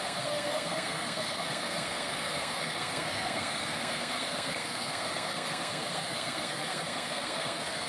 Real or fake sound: fake